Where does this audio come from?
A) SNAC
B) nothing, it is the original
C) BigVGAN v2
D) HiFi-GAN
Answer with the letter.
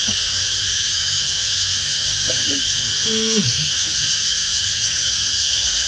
A